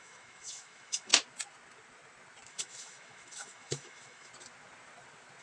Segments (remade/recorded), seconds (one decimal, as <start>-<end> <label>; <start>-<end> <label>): 0.0-1.1 remade; 1.1-2.5 recorded; 2.5-4.3 remade; 4.3-5.4 recorded